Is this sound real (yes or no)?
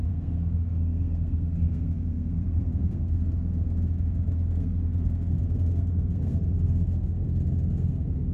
no